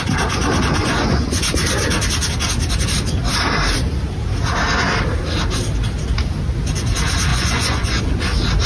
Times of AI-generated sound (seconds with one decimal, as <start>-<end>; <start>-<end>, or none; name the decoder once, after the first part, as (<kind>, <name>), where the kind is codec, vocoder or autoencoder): 0.8-1.5 (vocoder, Vocos); 7.3-8.0